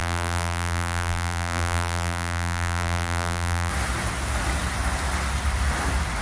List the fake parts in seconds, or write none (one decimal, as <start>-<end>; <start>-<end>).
0.0-3.7